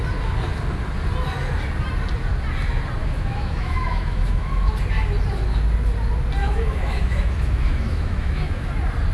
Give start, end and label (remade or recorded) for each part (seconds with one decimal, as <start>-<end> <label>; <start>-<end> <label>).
0.0-3.0 recorded; 3.0-4.7 remade; 4.7-6.4 recorded; 6.4-8.7 remade; 8.7-9.1 recorded